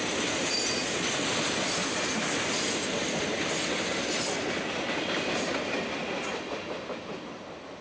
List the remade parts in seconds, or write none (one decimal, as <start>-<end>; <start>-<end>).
none